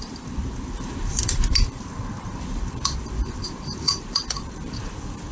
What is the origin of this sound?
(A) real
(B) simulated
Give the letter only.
B